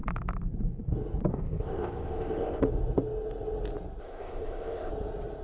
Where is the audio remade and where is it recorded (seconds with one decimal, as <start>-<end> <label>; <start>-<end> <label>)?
0.0-1.3 recorded; 1.3-2.6 remade; 2.6-4.0 recorded; 4.0-4.9 remade; 4.9-5.4 recorded